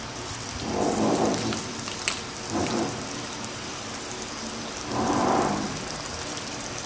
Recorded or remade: remade